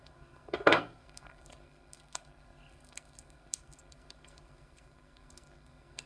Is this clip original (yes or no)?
no